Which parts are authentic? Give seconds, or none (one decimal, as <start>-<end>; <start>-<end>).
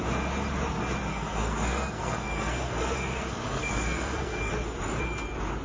0.0-1.1; 4.5-5.6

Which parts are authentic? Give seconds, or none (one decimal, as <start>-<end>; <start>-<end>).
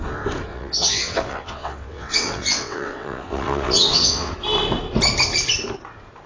0.0-0.5; 4.3-6.3